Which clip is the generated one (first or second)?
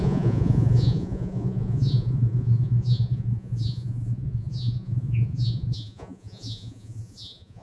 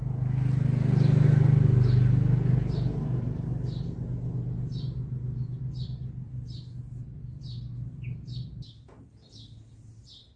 first